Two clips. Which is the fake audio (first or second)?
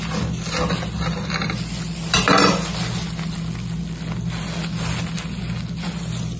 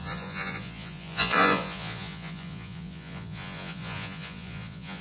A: second